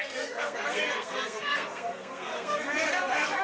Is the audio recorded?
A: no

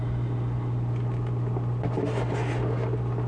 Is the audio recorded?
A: yes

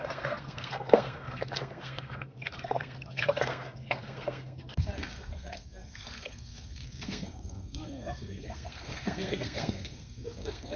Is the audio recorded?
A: no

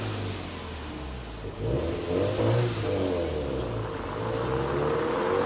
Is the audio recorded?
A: yes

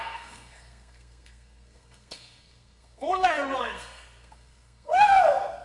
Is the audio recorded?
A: no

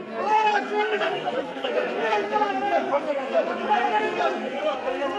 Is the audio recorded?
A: no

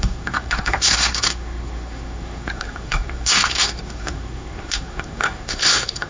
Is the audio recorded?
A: no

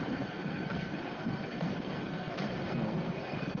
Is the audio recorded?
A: no